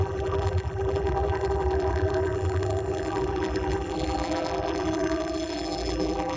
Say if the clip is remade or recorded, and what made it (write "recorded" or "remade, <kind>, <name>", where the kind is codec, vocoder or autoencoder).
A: remade, vocoder, BigVGAN v2